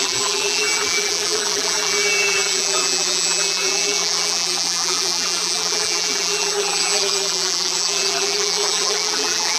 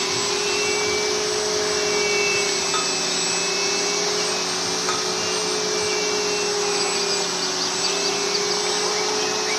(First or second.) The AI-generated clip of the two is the first